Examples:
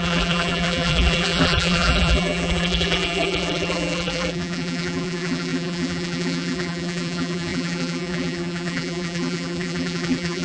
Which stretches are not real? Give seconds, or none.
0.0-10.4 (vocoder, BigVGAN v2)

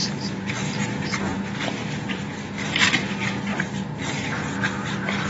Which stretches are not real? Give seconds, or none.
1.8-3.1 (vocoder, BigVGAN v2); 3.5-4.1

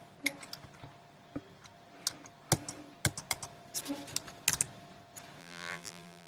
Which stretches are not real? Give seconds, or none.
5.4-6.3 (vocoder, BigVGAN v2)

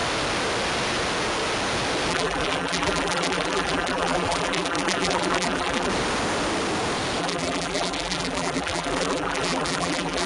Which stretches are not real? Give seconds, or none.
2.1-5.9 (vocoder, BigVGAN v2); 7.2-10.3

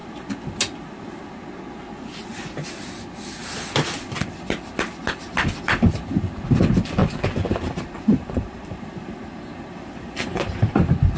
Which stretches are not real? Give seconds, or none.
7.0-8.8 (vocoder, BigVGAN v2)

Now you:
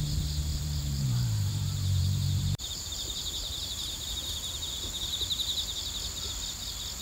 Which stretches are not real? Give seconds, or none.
0.5-4.1 (vocoder, BigVGAN v2)